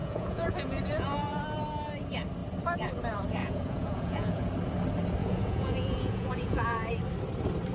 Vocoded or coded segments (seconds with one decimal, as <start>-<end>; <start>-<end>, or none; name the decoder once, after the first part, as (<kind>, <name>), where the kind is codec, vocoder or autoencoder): 0.0-1.4 (vocoder, Vocos); 3.4-4.4; 5.2-6.9

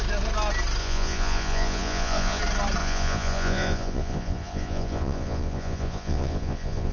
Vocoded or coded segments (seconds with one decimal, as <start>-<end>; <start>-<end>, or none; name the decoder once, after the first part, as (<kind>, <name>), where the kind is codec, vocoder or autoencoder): 0.8-2.4 (vocoder, Vocos); 2.8-6.9

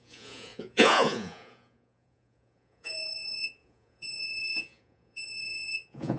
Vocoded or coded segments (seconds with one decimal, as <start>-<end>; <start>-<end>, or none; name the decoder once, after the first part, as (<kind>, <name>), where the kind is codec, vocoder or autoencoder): 0.0-6.2 (vocoder, Vocos)